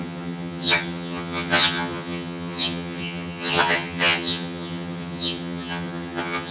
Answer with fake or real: fake